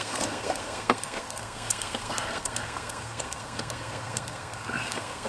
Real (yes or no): no